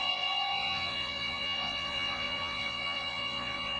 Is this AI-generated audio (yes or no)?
yes